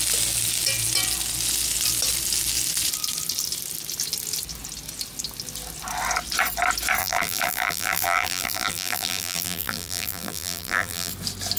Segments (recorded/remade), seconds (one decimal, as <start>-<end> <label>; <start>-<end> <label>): 0.0-7.0 recorded; 7.0-11.1 remade; 11.1-11.6 recorded